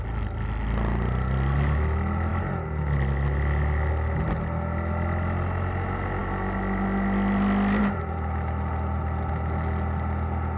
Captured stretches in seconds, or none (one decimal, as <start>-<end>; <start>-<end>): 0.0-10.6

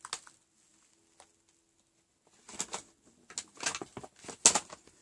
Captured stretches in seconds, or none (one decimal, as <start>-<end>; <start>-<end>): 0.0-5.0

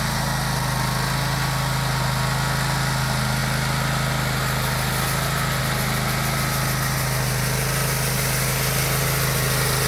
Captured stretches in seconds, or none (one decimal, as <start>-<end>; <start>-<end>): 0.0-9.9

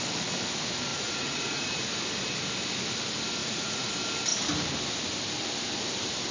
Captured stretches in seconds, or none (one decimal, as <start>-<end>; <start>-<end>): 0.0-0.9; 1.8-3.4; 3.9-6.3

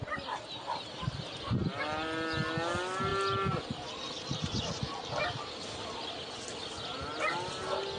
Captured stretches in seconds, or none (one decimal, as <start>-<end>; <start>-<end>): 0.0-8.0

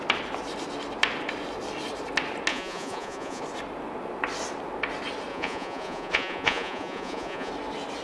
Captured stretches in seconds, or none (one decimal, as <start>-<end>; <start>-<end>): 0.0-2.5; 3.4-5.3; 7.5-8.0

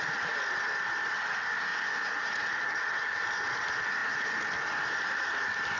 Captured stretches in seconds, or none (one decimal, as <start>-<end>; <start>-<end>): 0.0-1.7; 2.6-5.8

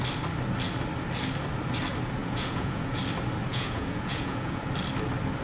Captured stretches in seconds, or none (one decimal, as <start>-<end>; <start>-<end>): 0.0-2.2; 3.0-3.5; 4.6-5.4